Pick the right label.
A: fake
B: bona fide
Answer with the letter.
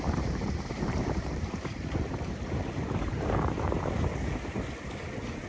A